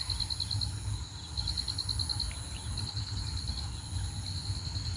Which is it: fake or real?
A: real